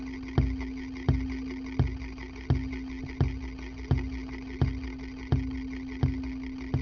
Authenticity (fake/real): real